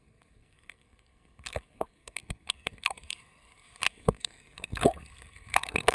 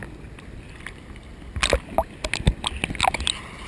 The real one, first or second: second